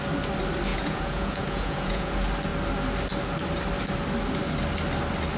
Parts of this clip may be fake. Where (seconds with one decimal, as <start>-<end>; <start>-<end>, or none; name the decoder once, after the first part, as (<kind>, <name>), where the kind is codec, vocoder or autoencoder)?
0.7-2.1 (vocoder, Vocos)